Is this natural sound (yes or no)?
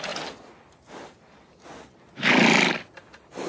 yes